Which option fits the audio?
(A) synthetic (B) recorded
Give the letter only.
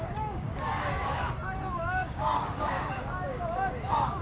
A